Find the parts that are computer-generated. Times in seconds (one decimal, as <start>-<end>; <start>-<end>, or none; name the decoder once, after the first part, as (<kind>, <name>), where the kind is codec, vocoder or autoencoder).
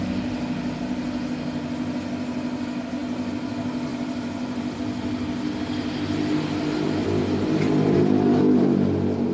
3.0-3.5 (vocoder, BigVGAN v2); 3.9-4.8; 7.0-8.4